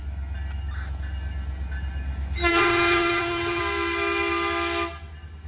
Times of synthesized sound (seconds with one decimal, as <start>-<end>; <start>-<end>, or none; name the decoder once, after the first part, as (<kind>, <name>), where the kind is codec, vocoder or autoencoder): 2.5-3.6 (vocoder, HiFi-GAN)